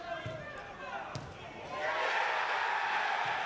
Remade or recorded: recorded